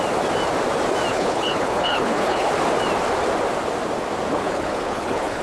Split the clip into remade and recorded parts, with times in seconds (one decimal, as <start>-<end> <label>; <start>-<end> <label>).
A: 0.0-1.1 recorded; 1.1-2.5 remade; 2.5-4.4 recorded; 4.4-5.4 remade